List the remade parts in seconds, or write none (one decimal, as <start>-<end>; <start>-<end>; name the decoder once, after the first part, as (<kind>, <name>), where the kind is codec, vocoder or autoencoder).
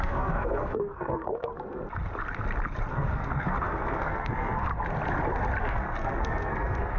0.0-1.5 (codec, SNAC); 2.9-4.7; 5.6-7.0